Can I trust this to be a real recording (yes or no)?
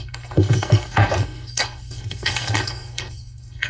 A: no